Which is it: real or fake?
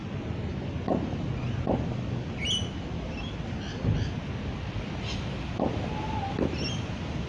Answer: real